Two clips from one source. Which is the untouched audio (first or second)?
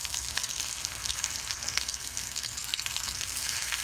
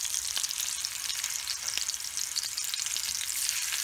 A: second